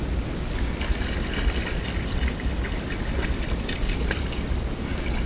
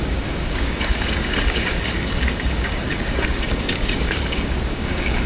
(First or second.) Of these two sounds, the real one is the first